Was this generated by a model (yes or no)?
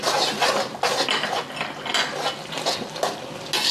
no